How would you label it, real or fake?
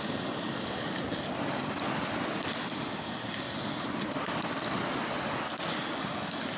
real